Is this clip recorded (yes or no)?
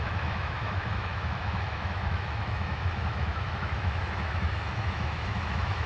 no